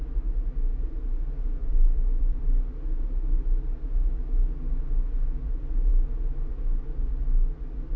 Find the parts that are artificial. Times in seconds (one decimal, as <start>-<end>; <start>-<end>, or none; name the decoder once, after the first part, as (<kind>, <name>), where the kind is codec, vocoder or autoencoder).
1.6-2.4 (vocoder, BigVGAN v2)